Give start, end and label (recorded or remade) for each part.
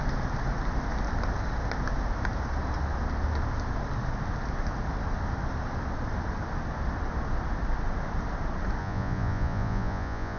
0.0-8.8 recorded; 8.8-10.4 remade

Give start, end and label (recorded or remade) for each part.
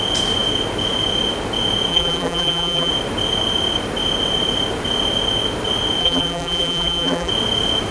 0.0-1.9 recorded; 1.9-2.9 remade; 2.9-6.0 recorded; 6.0-7.3 remade; 7.3-7.9 recorded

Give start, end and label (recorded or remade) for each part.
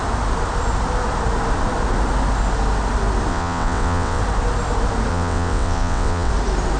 0.0-3.3 recorded; 3.3-4.2 remade; 4.2-5.1 recorded; 5.1-6.3 remade; 6.3-6.8 recorded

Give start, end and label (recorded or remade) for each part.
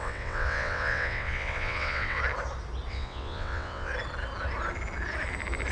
0.0-2.2 remade; 2.2-2.9 recorded; 2.9-3.9 remade; 3.9-5.7 recorded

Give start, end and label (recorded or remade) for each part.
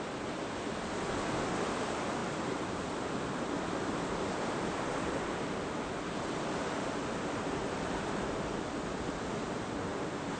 0.0-10.4 recorded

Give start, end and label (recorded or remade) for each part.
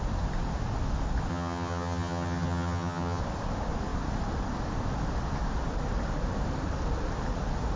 0.0-1.3 recorded; 1.3-3.2 remade; 3.2-7.8 recorded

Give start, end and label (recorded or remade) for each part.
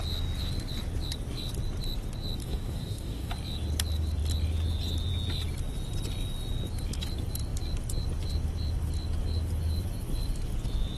0.0-2.4 recorded; 2.4-3.3 remade; 3.3-11.0 recorded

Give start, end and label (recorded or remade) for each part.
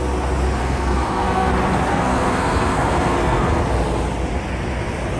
0.0-0.6 recorded; 0.6-1.5 remade; 1.5-1.9 recorded; 1.9-3.6 remade; 3.6-5.2 recorded